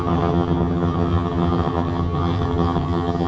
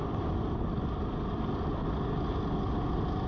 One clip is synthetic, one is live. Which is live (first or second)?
second